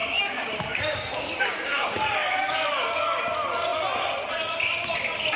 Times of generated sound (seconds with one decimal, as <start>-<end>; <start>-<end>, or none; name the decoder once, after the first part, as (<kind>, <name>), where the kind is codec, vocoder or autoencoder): 0.0-3.2 (codec, DAC)